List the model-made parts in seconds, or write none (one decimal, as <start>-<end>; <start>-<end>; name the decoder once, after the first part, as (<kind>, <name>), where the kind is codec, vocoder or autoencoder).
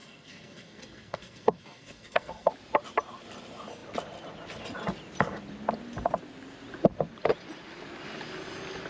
0.0-2.5 (codec, SNAC)